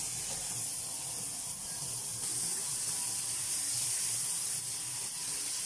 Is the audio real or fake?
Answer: real